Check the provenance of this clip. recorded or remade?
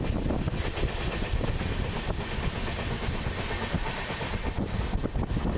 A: recorded